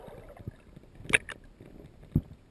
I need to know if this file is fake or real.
real